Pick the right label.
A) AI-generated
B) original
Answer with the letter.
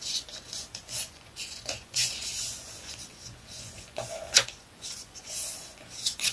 A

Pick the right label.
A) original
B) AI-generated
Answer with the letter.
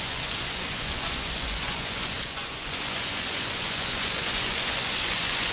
B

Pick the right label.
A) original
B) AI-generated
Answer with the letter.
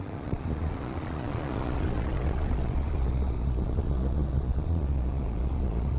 B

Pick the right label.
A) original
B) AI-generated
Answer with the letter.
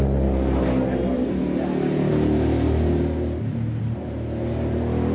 A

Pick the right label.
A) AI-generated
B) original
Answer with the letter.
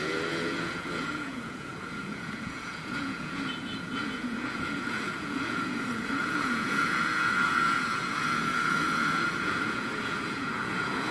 A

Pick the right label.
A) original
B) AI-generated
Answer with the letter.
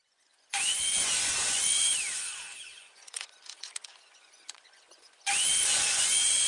B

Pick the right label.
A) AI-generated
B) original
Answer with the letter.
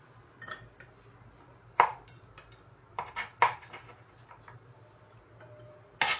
B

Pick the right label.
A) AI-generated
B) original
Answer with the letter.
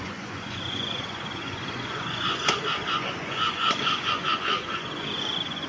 A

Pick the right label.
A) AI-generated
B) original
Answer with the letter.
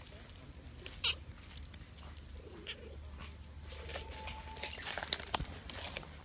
B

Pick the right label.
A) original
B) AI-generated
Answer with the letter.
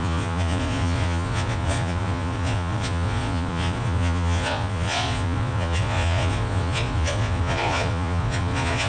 B